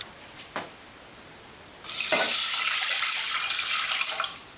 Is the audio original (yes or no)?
yes